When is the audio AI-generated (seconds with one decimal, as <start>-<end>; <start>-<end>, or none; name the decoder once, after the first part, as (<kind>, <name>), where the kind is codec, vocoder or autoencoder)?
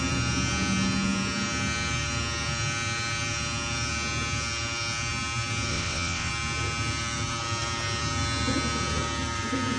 5.7-6.3 (vocoder, WaveNeXt)